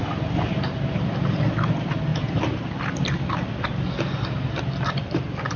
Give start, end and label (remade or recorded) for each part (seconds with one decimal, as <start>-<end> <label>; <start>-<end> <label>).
0.0-5.6 recorded